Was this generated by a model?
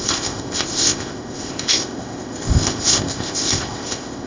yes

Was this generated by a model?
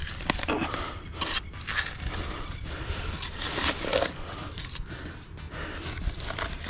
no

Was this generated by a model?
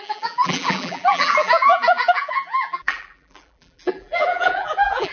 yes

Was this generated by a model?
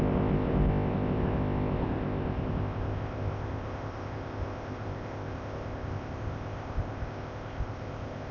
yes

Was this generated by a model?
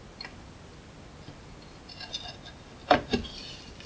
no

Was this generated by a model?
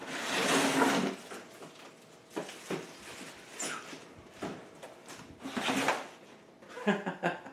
no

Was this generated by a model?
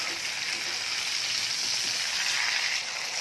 no